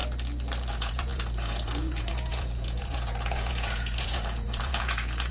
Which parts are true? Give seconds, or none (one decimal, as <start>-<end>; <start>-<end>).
0.0-0.7